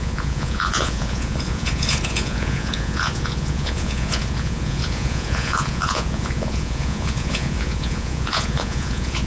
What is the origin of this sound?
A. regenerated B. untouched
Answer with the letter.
A